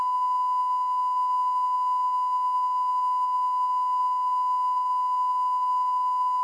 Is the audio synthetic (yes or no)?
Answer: no